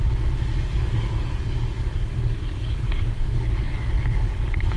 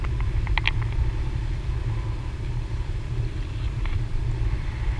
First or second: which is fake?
first